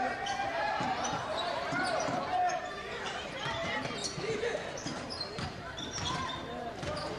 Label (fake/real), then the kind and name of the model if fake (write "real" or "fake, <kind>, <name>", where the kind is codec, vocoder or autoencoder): fake, vocoder, BigVGAN v2